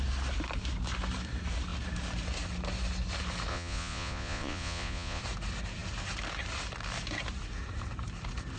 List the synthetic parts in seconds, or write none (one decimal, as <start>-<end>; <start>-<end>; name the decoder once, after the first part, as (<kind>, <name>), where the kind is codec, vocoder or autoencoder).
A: 3.5-5.2 (vocoder, Vocos)